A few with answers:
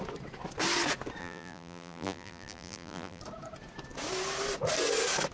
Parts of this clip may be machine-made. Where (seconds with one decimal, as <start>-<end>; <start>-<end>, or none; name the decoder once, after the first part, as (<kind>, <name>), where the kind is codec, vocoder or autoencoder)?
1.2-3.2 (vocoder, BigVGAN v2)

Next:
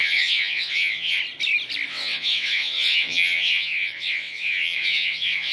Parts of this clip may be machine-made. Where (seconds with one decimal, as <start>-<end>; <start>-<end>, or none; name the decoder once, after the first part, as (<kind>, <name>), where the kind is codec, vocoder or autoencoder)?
0.0-1.2 (vocoder, WaveNeXt); 1.9-5.5

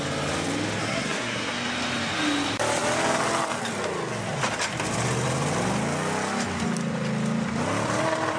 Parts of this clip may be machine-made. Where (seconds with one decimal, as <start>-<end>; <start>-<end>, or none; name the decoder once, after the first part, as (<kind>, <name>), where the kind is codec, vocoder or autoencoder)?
0.8-1.5 (codec, SNAC)